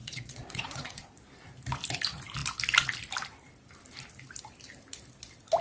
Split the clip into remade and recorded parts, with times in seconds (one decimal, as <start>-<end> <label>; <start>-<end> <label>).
0.0-1.1 remade; 1.1-5.6 recorded